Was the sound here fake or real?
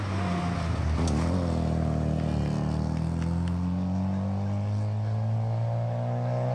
real